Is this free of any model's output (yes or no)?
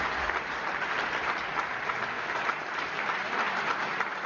yes